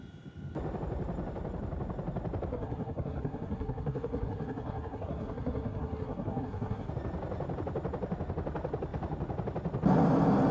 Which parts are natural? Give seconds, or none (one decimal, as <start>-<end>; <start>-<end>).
0.0-2.5; 6.9-10.5